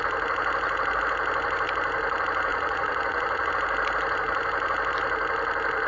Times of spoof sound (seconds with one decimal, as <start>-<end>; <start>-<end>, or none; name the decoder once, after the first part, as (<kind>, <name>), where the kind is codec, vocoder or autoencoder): 2.5-3.5 (vocoder, Vocos)